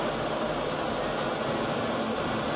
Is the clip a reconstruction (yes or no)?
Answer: no